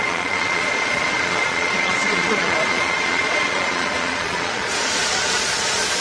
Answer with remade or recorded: remade